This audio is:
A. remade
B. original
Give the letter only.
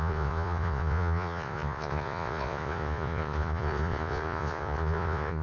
A